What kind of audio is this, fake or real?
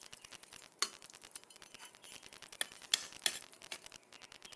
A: real